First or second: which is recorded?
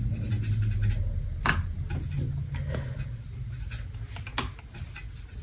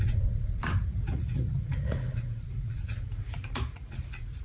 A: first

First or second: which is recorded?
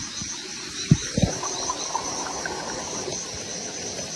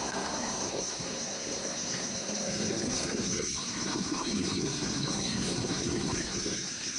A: first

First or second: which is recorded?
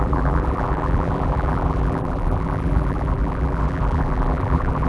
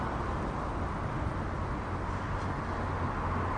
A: second